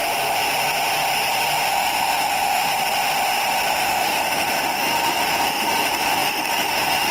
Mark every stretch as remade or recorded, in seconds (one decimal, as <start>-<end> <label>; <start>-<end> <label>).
0.0-1.7 recorded; 1.7-2.6 remade; 2.6-3.7 recorded; 3.7-7.1 remade